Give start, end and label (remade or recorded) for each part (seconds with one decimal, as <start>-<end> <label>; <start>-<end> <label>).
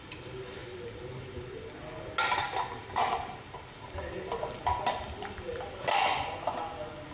0.0-7.1 recorded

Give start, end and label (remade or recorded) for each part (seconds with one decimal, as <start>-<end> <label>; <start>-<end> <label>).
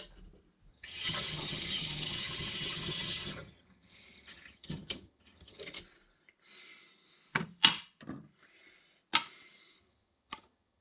0.0-0.7 recorded; 0.7-5.6 remade; 5.6-9.8 recorded; 9.8-10.8 remade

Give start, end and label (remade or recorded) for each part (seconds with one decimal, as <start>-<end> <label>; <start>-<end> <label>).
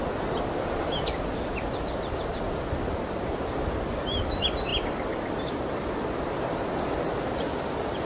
0.0-8.1 recorded